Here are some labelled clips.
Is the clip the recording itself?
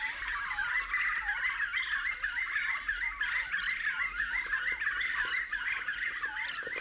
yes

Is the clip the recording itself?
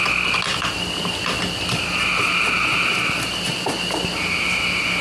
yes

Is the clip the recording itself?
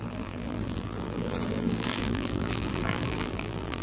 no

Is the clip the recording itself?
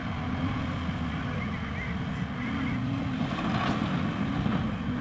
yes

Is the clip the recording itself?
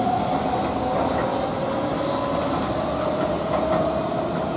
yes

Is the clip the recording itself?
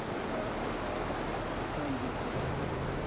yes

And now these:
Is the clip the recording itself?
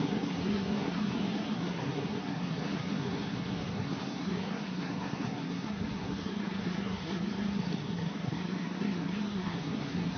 no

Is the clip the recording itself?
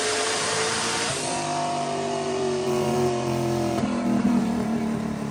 no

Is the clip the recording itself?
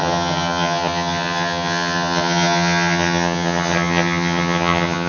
no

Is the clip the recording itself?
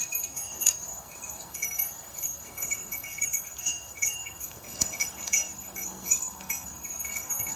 no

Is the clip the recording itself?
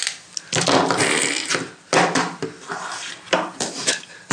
yes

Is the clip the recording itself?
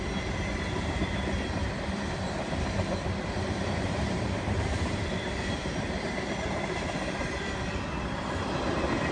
no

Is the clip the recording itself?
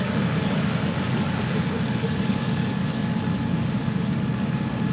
no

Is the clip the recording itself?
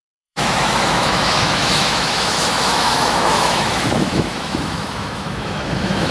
no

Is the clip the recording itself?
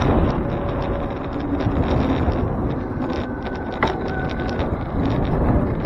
yes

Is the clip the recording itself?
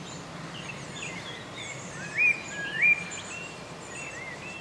yes